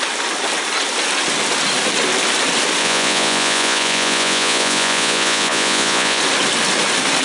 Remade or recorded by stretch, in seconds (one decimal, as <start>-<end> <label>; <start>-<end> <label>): 0.0-2.8 recorded; 2.8-6.2 remade; 6.2-7.2 recorded